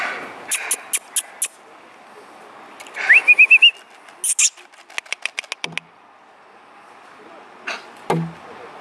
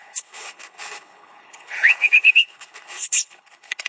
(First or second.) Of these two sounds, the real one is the first